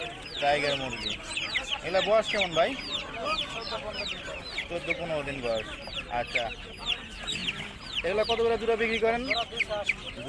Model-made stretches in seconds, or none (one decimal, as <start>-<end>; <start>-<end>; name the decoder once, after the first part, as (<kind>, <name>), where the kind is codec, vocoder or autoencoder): 3.0-5.5 (vocoder, BigVGAN v2); 7.4-8.3